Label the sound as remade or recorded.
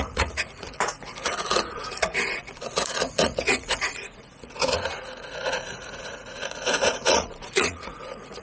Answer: remade